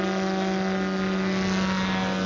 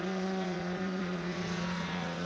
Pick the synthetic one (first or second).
second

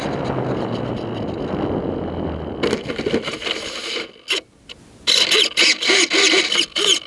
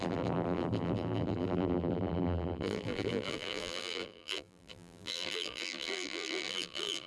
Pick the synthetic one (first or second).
second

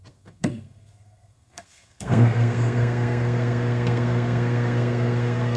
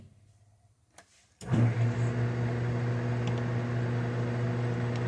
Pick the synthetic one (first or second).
first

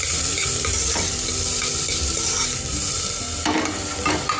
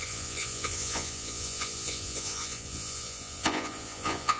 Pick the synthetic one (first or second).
second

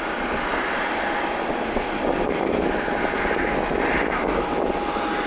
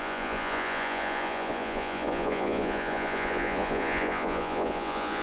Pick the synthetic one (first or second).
second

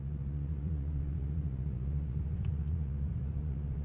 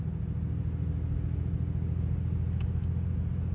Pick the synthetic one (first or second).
first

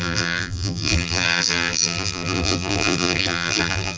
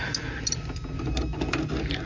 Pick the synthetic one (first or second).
first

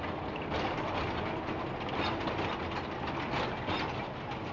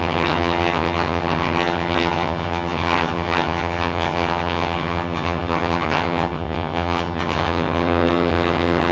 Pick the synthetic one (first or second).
second